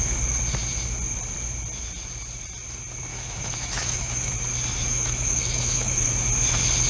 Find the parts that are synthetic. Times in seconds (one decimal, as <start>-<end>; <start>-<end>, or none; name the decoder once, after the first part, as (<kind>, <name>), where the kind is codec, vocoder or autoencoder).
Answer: 3.1-4.3 (autoencoder, DAC-VAE); 4.9-6.1